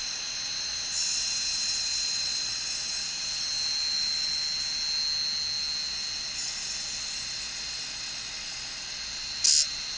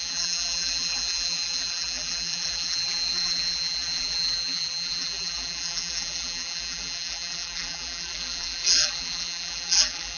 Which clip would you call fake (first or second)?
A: second